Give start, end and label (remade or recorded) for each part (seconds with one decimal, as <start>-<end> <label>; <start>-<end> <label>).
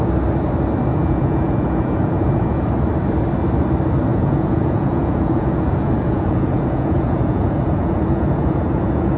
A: 0.0-0.9 recorded; 0.9-2.6 remade; 2.6-4.1 recorded; 4.1-9.2 remade